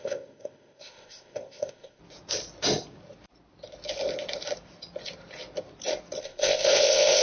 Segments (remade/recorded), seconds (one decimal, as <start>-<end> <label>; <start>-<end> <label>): 0.0-2.0 remade; 2.0-6.2 recorded; 6.2-7.2 remade